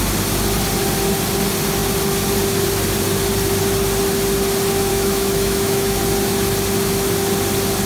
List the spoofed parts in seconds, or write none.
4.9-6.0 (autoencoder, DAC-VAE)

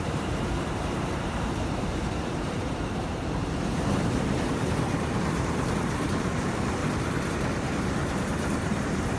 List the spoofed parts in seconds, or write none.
0.0-6.8 (vocoder, BigVGAN v2); 7.3-9.2